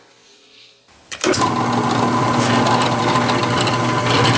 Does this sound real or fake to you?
fake